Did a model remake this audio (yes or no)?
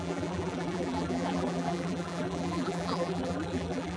yes